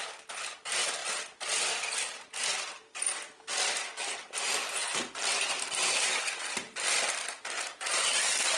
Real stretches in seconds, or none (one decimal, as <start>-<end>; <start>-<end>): 0.0-8.6

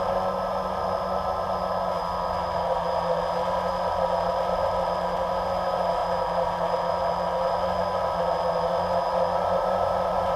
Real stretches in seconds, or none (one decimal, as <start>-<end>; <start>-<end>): 0.0-10.4

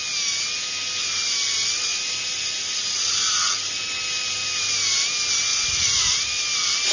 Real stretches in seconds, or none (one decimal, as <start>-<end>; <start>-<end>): 0.0-1.9; 3.5-5.5; 6.4-6.9

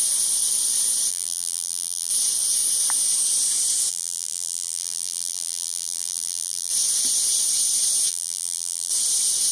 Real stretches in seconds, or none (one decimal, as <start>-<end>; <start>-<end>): 0.0-1.1; 2.1-3.9; 6.7-8.1; 8.9-9.5

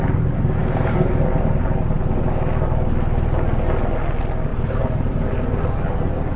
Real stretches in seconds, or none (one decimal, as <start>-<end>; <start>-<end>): 0.0-0.6; 1.1-4.5; 5.3-6.4

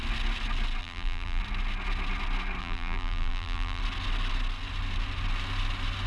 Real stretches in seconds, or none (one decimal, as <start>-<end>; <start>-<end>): 0.0-0.8; 1.4-2.6; 3.8-6.1

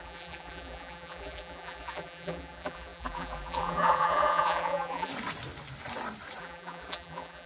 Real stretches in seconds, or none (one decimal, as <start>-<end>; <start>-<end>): 5.1-6.4

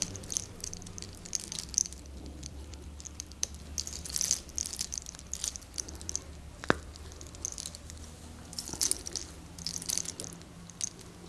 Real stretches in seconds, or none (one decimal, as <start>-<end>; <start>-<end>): 0.0-1.8; 3.6-4.6; 6.3-11.3